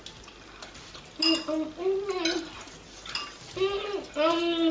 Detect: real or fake real